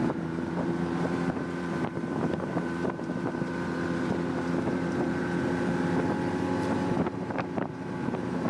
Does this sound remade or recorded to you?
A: remade